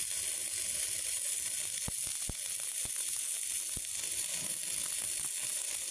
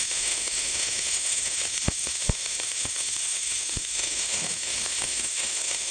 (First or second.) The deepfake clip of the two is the second